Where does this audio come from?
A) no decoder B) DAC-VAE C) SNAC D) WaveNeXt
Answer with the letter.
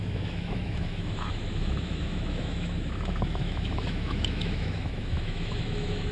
B